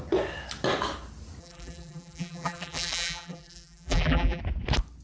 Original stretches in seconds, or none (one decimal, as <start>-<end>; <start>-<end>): 0.0-1.4; 4.4-5.0